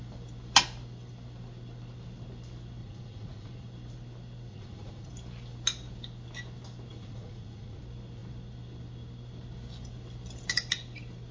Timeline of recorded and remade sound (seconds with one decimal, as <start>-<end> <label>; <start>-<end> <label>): 0.0-2.8 recorded; 2.8-3.7 remade; 3.7-4.5 recorded; 4.5-5.1 remade; 5.1-6.9 recorded; 6.9-7.8 remade; 7.8-11.3 recorded